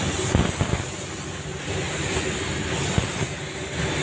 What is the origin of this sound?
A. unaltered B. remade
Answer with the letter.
A